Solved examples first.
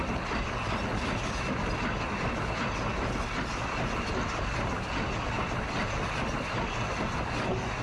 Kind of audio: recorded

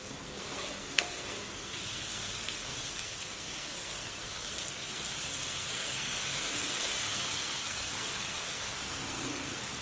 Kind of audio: remade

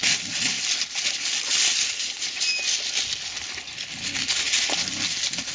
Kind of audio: recorded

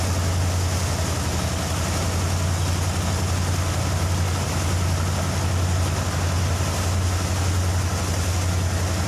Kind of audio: recorded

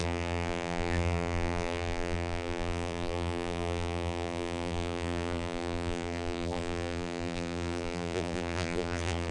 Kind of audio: remade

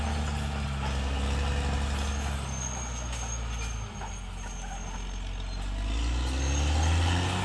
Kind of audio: recorded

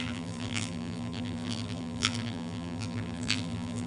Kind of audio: remade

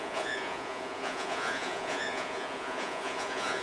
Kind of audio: remade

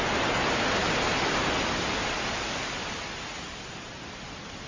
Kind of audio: recorded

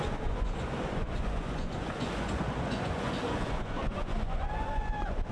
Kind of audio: remade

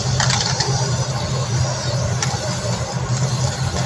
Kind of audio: recorded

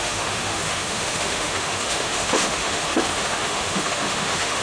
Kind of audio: remade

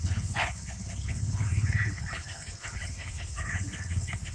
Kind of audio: remade